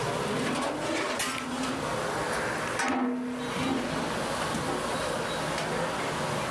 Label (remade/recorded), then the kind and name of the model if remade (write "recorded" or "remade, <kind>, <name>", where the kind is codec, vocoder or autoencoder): recorded